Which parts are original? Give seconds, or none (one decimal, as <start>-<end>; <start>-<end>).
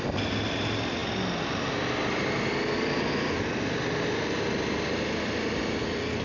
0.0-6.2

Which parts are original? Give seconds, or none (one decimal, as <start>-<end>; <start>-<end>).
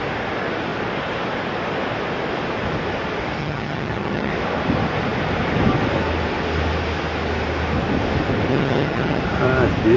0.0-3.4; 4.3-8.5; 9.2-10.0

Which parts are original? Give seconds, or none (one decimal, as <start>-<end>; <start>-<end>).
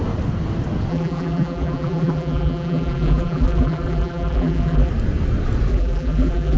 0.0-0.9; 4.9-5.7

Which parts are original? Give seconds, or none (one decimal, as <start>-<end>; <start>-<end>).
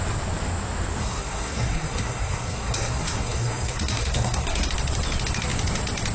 0.0-1.0; 4.7-6.1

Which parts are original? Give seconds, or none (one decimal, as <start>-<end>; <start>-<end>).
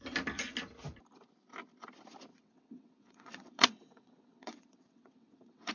0.0-2.3